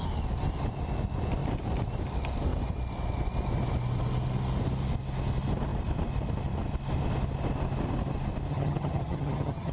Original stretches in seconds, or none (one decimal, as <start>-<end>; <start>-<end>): 0.0-8.5